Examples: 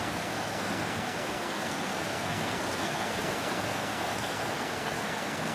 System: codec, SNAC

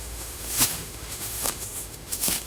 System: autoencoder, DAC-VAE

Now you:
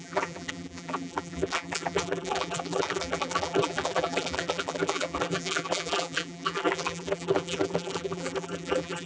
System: vocoder, BigVGAN v2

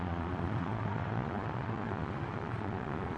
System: vocoder, Vocos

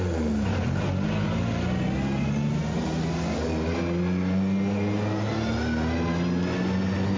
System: none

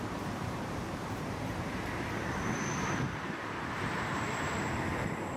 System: vocoder, BigVGAN v2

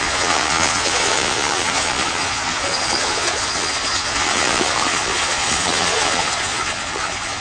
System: vocoder, Vocos